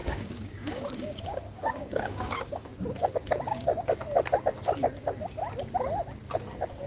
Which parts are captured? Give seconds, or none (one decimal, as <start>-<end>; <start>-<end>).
2.7-6.9